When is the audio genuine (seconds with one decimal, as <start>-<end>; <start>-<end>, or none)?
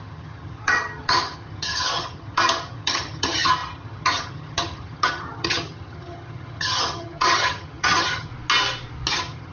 8.3-9.1